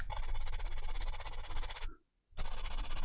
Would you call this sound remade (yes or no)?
no